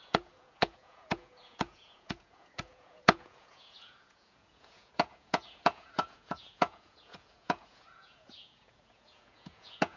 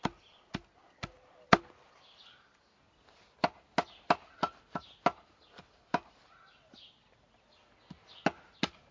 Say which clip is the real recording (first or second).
second